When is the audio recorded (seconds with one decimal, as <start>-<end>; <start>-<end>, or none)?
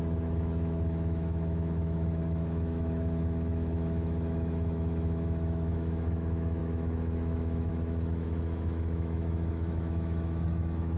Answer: none